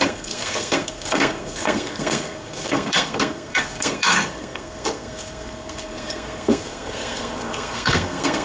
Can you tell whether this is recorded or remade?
remade